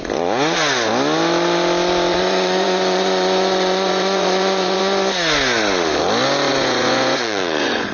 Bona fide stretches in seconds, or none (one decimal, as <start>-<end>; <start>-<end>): 0.0-2.1; 4.8-6.5